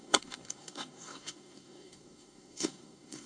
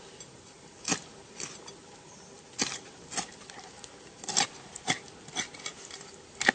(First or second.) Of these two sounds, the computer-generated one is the first